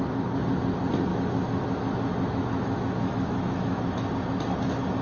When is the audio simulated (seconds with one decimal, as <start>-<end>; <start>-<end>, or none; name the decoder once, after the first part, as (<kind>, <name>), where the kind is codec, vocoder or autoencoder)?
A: 1.1-4.1 (autoencoder, DAC-VAE)